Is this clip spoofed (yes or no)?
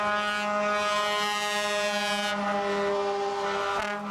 no